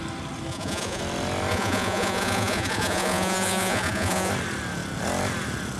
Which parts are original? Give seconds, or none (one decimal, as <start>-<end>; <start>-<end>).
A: 0.0-0.5; 1.0-1.5; 4.3-5.8